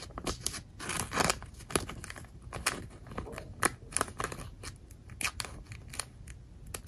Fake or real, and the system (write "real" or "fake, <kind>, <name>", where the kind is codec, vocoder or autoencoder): real